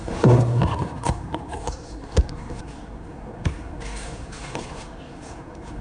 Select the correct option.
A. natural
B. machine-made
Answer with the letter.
B